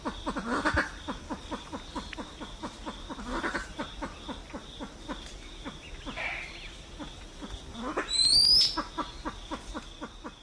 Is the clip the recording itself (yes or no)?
yes